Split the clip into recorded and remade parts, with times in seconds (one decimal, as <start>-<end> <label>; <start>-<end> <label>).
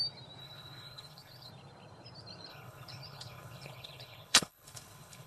0.0-0.4 recorded; 0.4-1.5 remade; 1.5-2.5 recorded; 2.5-5.3 remade